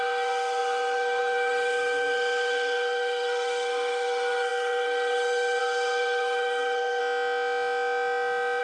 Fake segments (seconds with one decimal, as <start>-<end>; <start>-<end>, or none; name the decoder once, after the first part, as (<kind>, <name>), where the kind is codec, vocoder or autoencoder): 0.0-7.0 (codec, SNAC)